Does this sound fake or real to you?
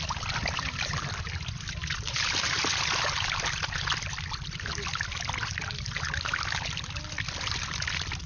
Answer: real